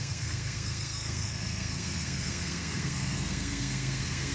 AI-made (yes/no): yes